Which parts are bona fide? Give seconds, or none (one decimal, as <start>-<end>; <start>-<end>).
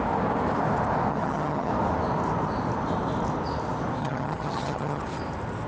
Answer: 0.0-1.1; 1.7-4.0; 5.0-5.7